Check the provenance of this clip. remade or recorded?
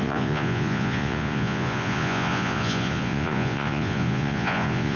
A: remade